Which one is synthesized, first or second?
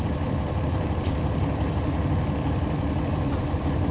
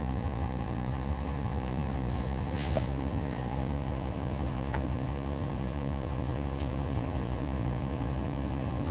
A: second